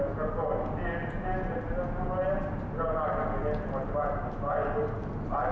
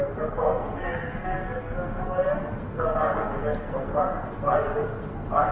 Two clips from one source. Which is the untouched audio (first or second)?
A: first